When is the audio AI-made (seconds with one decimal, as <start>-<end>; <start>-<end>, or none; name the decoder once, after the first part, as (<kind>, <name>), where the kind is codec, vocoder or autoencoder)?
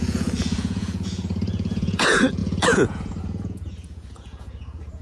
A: 0.0-5.0 (vocoder, Vocos)